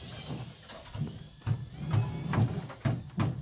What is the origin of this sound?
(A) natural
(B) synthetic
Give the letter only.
A